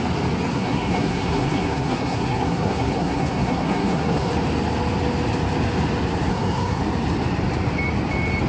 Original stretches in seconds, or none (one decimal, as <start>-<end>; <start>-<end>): 0.0-0.5; 4.3-6.3; 6.8-8.5